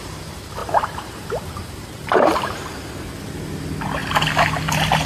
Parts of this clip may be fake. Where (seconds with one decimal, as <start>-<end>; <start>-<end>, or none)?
0.6-3.0